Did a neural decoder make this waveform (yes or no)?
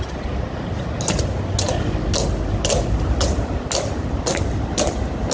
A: no